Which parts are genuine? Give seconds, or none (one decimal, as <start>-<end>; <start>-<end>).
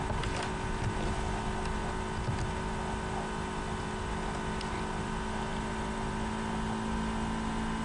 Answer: 0.0-7.8